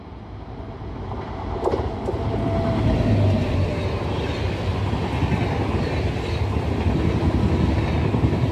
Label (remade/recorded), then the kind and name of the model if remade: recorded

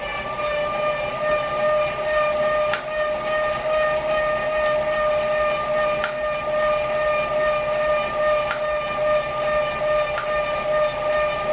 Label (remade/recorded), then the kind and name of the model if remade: recorded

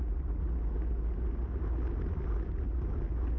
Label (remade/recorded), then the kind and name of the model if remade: recorded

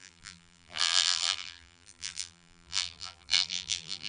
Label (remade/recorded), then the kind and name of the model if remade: remade, vocoder, BigVGAN v2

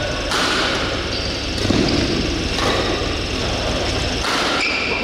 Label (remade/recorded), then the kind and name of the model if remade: recorded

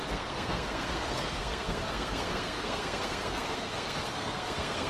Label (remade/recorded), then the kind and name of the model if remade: remade, codec, SNAC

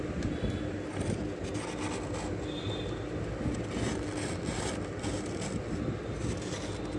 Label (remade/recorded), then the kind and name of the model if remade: recorded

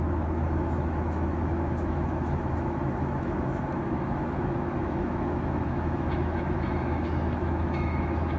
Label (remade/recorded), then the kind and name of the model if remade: remade, autoencoder, DAC-VAE